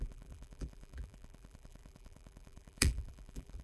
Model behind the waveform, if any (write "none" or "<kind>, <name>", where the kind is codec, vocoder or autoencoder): vocoder, BigVGAN v2